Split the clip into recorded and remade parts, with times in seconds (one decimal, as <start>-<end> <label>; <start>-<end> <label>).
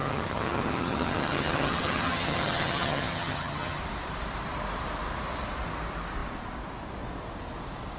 0.0-3.8 remade; 3.8-8.0 recorded